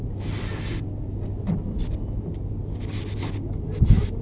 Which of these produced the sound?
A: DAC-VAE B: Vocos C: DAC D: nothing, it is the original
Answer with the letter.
D